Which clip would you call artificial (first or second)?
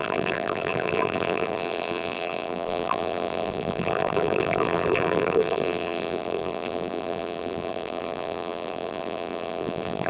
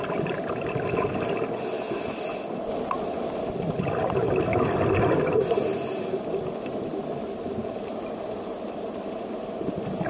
first